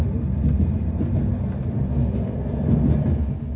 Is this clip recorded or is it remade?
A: recorded